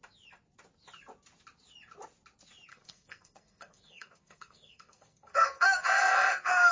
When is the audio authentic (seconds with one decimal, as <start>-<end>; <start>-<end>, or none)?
0.0-2.7